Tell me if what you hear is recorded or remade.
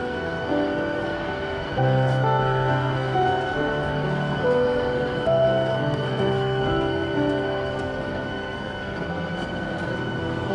remade